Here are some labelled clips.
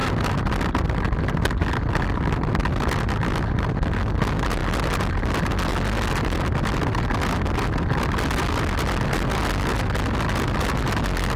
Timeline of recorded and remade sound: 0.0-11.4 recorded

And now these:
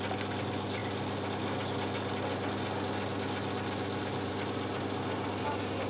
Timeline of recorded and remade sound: 0.0-5.9 recorded

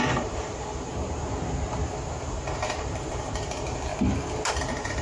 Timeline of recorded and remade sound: 0.0-0.9 remade; 0.9-2.3 recorded; 2.3-3.9 remade; 3.9-4.5 recorded; 4.5-5.0 remade